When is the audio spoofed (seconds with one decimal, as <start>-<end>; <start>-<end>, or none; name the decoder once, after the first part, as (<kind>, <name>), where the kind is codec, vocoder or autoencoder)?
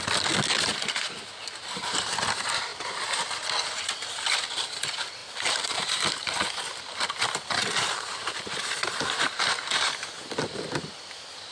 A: 5.2-6.0 (vocoder, BigVGAN v2); 7.6-9.4